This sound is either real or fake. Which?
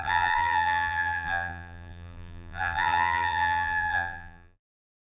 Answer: fake